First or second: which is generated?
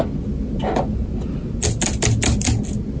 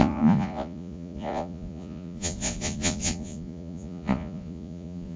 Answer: second